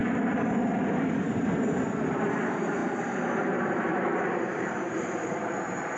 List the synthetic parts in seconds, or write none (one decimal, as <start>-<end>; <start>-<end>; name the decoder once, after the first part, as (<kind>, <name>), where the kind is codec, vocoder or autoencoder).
1.1-6.0 (vocoder, BigVGAN v2)